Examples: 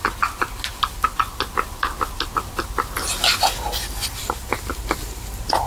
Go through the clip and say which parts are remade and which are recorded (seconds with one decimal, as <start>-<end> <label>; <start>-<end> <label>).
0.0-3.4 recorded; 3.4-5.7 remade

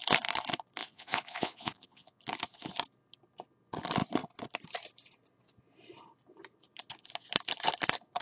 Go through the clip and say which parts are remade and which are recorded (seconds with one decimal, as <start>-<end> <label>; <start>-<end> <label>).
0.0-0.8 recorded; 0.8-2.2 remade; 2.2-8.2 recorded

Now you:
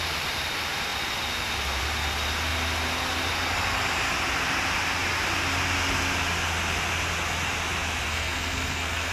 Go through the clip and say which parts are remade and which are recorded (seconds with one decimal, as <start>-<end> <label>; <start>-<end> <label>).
0.0-8.1 recorded; 8.1-9.1 remade

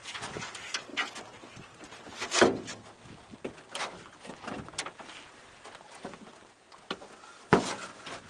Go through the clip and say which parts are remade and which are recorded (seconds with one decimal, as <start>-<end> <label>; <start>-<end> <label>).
0.0-0.5 remade; 0.5-7.5 recorded; 7.5-8.3 remade

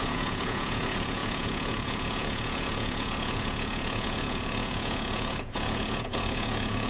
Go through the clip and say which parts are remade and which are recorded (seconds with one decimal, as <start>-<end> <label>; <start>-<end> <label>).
0.0-6.9 remade

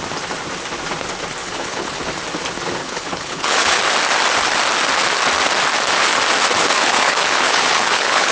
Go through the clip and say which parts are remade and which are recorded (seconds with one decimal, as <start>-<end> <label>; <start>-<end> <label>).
0.0-1.4 recorded; 1.4-2.0 remade; 2.0-2.8 recorded; 2.8-3.8 remade; 3.8-6.6 recorded; 6.6-8.3 remade

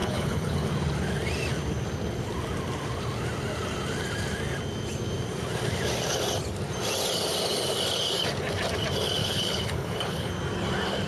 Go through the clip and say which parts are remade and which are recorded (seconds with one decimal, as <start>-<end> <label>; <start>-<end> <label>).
0.0-0.7 remade; 0.7-9.2 recorded; 9.2-10.3 remade; 10.3-11.1 recorded

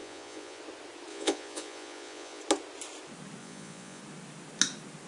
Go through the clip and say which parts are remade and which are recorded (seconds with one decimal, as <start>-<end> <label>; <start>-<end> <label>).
0.0-0.6 remade; 0.6-1.1 recorded; 1.1-2.4 remade; 2.4-3.4 recorded; 3.4-4.0 remade; 4.0-5.1 recorded